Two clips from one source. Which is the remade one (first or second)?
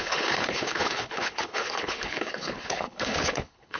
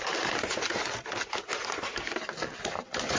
first